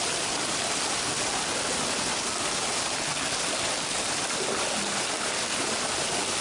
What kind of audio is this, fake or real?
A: real